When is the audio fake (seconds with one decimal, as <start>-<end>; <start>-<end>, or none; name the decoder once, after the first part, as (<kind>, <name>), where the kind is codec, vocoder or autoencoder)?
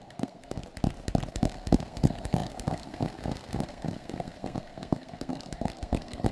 0.0-0.6 (codec, SNAC); 1.3-6.3